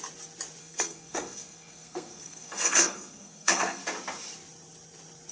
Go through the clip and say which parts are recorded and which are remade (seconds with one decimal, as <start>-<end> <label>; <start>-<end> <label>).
0.0-0.6 recorded; 0.6-3.8 remade; 3.8-5.3 recorded